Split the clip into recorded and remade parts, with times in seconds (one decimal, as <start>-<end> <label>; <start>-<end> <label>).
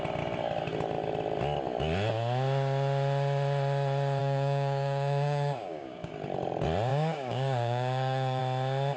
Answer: 0.0-4.2 recorded; 4.2-6.1 remade; 6.1-6.9 recorded; 6.9-8.4 remade; 8.4-9.0 recorded